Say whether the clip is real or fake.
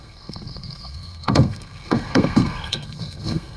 fake